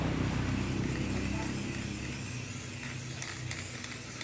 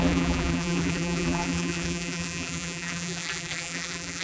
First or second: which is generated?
second